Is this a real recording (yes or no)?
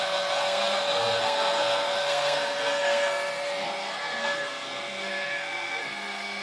no